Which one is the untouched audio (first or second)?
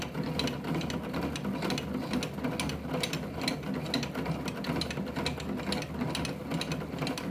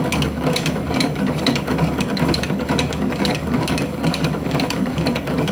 first